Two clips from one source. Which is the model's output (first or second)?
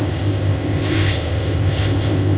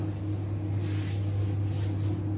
first